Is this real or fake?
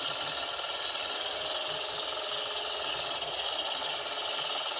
real